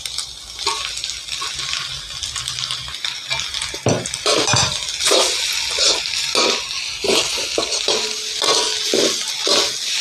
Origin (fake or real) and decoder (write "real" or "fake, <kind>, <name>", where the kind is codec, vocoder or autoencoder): real